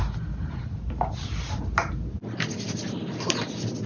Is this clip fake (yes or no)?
no